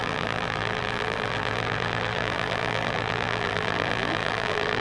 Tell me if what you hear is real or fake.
fake